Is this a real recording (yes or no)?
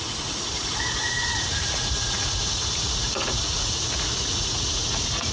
no